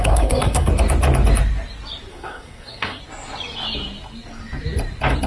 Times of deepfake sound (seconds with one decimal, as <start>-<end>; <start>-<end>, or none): 0.0-0.7; 2.1-3.0